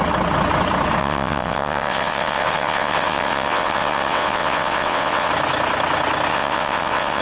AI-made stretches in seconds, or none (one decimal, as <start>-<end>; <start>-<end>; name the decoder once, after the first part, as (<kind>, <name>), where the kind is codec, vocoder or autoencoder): 1.0-5.3 (vocoder, WaveNeXt); 6.3-7.2